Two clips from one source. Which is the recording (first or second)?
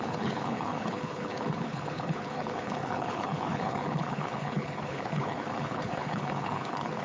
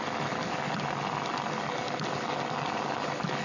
second